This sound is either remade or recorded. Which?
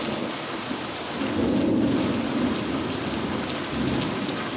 recorded